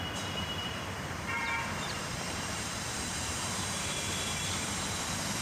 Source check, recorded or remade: remade